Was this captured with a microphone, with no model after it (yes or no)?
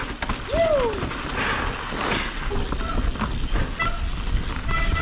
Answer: yes